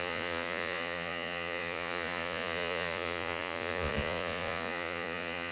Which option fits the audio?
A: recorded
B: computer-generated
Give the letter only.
B